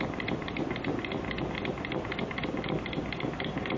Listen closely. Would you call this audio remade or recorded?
recorded